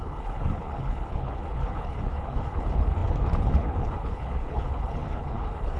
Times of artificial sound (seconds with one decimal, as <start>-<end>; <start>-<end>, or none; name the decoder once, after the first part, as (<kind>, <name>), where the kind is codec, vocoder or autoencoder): 0.0-5.8 (codec, HILCodec)